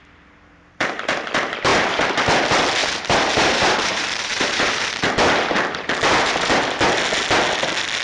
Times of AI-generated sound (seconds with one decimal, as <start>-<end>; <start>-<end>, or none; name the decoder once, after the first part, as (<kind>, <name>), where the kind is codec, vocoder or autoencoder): 2.8-5.1 (vocoder, BigVGAN v2)

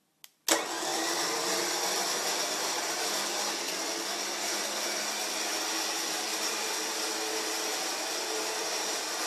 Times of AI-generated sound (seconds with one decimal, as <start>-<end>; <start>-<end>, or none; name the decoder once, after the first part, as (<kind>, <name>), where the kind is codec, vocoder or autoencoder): 0.9-3.5 (vocoder, BigVGAN v2); 6.3-8.6

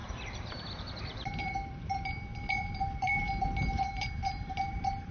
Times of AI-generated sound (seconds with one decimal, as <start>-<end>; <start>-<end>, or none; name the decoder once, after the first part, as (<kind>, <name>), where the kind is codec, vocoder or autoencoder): 0.0-2.3 (vocoder, BigVGAN v2); 3.0-5.1

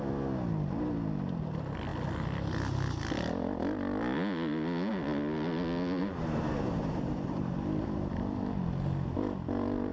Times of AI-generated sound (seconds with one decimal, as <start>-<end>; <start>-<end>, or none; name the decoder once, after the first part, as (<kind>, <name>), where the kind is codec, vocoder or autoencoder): 6.0-7.5 (vocoder, BigVGAN v2)

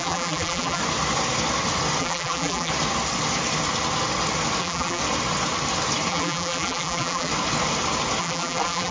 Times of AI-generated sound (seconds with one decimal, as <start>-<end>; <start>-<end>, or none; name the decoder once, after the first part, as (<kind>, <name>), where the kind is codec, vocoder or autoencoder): 0.0-0.8 (vocoder, BigVGAN v2); 2.0-2.7; 4.6-5.0; 6.1-7.3; 8.2-8.9

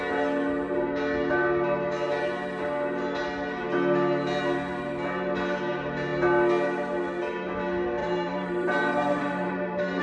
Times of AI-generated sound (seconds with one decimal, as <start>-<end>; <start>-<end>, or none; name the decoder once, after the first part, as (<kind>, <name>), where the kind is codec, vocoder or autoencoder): 8.0-10.0 (vocoder, BigVGAN v2)